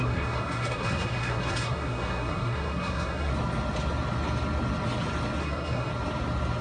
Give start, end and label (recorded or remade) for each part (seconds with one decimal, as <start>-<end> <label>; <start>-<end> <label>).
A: 0.0-3.3 remade; 3.3-5.4 recorded; 5.4-5.9 remade; 5.9-6.6 recorded